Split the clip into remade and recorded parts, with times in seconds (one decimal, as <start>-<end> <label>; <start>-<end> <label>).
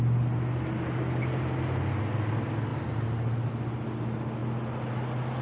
0.0-5.4 recorded